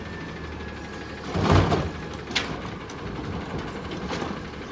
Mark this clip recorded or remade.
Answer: recorded